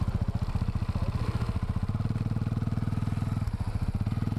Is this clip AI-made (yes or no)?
no